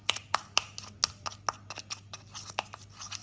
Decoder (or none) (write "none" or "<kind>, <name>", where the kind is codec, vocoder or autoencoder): none